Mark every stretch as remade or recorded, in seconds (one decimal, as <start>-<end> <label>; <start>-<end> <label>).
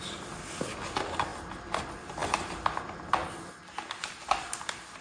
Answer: 0.0-5.0 recorded